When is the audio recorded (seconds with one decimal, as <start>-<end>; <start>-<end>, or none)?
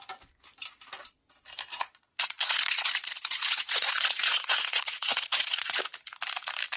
0.0-1.7; 5.8-6.8